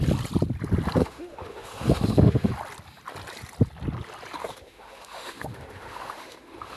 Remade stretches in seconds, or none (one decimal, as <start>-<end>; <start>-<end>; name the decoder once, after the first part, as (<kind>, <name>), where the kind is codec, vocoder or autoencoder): 1.0-2.5 (autoencoder, DAC-VAE); 4.4-6.8